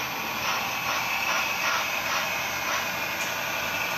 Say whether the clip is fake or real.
real